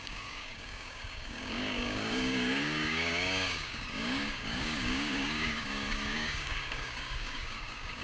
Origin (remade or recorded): remade